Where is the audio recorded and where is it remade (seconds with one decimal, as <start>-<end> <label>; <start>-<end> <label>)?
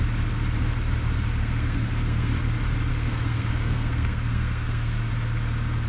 0.0-1.4 recorded; 1.4-2.4 remade; 2.4-2.9 recorded; 2.9-5.1 remade; 5.1-5.9 recorded